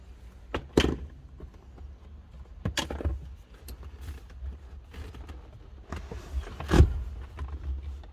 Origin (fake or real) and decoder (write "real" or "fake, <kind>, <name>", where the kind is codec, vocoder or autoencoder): real